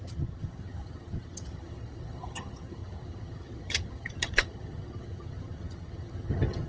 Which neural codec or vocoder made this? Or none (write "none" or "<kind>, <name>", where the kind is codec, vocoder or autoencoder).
vocoder, HiFi-GAN